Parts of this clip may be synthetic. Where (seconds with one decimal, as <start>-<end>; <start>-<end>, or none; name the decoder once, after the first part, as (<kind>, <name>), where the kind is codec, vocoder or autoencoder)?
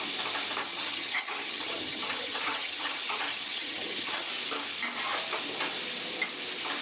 0.6-4.3 (vocoder, HiFi-GAN)